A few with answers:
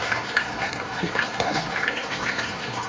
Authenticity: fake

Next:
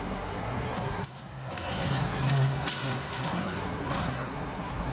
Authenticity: fake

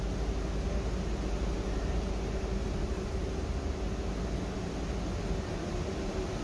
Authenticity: real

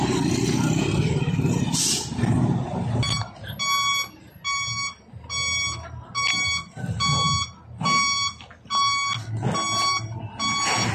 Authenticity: real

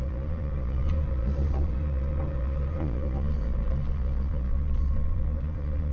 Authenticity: fake